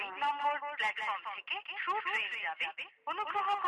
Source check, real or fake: real